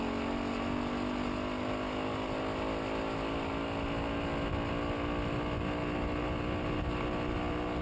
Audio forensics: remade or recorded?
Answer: recorded